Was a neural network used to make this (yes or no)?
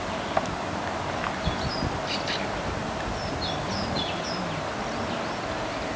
no